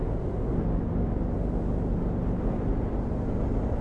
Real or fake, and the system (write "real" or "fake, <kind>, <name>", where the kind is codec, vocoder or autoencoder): real